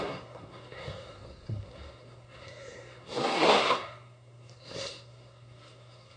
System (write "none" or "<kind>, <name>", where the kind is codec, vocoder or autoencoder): codec, SNAC